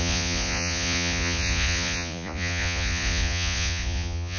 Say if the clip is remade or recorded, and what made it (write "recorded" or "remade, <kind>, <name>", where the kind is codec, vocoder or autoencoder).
remade, vocoder, Vocos